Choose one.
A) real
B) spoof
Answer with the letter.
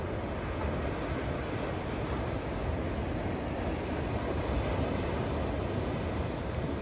A